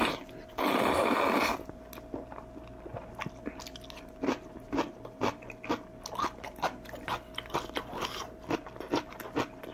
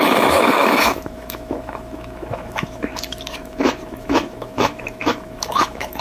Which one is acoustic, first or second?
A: first